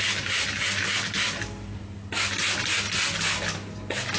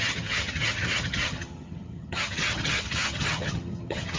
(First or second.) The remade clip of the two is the second